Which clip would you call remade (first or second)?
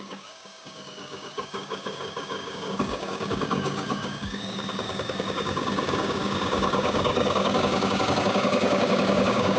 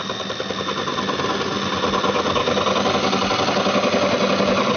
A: first